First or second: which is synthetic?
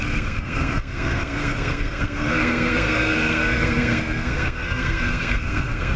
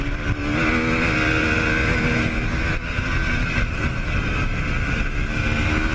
first